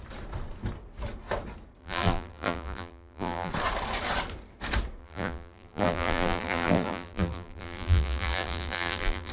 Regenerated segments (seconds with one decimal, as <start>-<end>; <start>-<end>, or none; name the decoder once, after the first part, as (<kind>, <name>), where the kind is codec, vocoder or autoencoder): 1.8-3.5 (vocoder, BigVGAN v2); 5.0-9.3